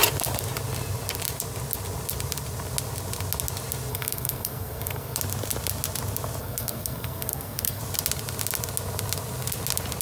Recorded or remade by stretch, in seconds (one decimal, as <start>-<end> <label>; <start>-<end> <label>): 0.0-3.9 recorded; 3.9-5.2 remade; 5.2-6.4 recorded; 6.4-7.8 remade; 7.8-10.0 recorded